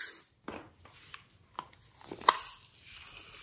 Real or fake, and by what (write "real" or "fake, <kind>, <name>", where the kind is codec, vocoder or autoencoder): real